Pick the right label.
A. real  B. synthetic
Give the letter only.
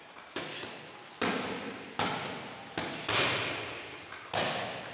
A